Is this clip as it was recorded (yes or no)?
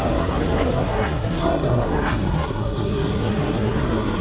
no